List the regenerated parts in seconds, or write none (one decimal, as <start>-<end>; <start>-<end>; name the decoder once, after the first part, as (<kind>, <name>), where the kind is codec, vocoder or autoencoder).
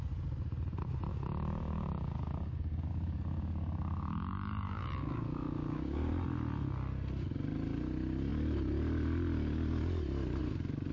1.1-6.1 (codec, DAC)